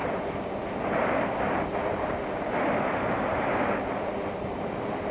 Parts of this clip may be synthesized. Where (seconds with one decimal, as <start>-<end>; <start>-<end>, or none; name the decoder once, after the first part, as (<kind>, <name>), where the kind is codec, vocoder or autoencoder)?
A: 0.0-1.4 (vocoder, BigVGAN v2); 1.9-2.7